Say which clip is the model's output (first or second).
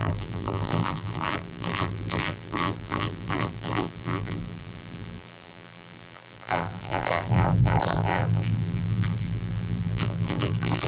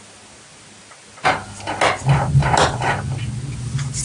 first